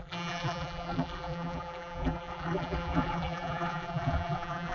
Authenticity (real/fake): fake